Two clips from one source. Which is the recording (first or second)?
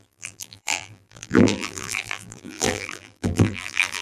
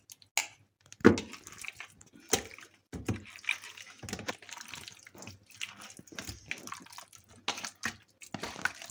second